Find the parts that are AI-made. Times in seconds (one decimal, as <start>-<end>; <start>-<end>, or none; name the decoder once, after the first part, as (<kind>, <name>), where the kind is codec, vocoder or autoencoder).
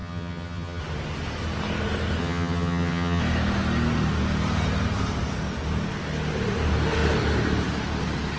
0.0-0.8 (vocoder, HiFi-GAN); 2.2-3.2